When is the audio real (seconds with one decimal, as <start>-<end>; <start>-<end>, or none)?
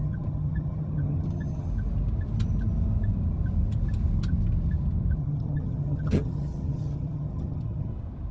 1.7-5.2; 7.9-8.3